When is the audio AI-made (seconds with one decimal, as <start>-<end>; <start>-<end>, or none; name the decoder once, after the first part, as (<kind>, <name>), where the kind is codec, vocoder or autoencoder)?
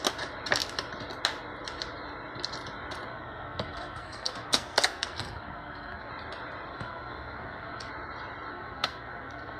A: 3.1-6.1 (codec, SNAC); 6.7-7.9; 8.5-9.6